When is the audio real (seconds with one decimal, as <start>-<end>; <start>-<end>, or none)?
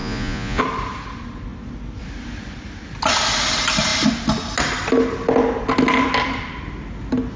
0.6-7.4